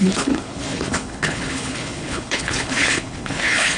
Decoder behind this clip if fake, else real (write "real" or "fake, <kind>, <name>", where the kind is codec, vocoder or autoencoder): fake, codec, HILCodec